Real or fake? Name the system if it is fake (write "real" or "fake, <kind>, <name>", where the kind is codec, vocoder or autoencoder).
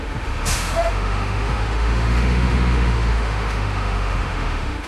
fake, autoencoder, DAC-VAE